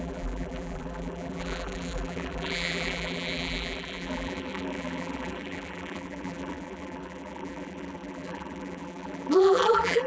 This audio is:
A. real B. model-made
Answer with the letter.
B